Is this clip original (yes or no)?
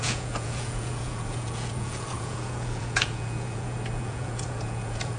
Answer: no